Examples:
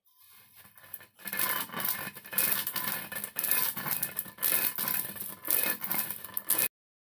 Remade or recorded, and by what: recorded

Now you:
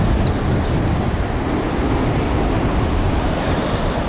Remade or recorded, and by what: recorded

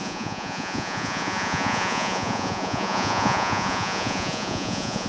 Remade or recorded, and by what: remade, vocoder, Vocos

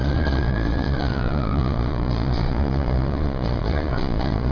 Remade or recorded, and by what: remade, vocoder, Vocos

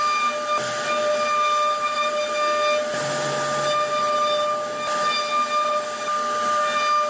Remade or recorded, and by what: recorded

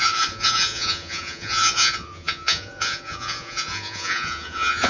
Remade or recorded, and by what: remade, vocoder, Vocos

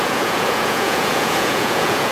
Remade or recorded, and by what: remade, vocoder, Vocos